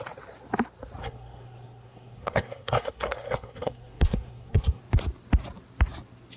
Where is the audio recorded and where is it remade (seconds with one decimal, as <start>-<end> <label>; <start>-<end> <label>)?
0.0-1.0 recorded; 1.0-4.8 remade; 4.8-6.4 recorded